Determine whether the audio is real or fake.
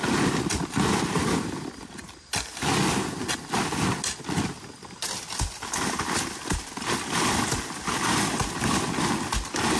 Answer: real